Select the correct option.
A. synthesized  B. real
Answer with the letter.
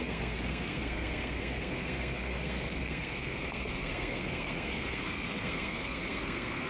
A